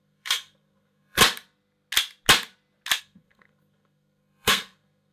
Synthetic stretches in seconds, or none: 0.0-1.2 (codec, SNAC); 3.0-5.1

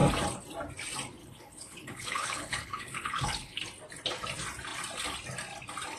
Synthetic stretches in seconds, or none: 1.2-3.6 (codec, HILCodec)

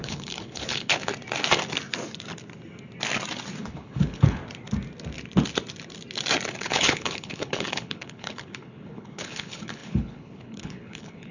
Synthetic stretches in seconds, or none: 0.0-1.1 (codec, HILCodec); 3.6-4.4; 6.6-11.3

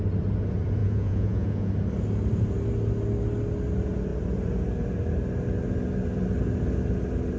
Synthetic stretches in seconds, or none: 0.8-1.7 (vocoder, Vocos)

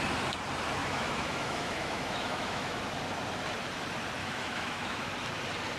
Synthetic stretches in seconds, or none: 0.8-2.8 (autoencoder, DAC-VAE); 4.2-5.1

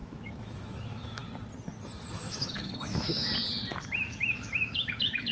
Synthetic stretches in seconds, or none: 0.0-1.2 (autoencoder, DAC-VAE); 2.1-3.3; 3.8-5.3

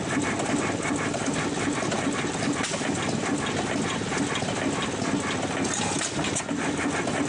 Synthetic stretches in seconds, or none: none

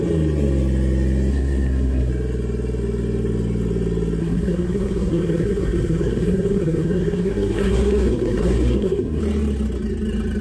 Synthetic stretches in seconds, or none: 1.3-2.1 (codec, SNAC); 4.2-9.2